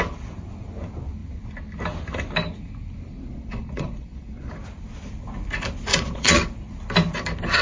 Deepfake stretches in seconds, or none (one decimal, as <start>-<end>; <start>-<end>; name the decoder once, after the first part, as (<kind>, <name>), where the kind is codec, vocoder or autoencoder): 3.3-4.5 (vocoder, Vocos); 5.9-6.4